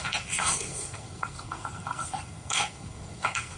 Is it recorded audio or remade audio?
remade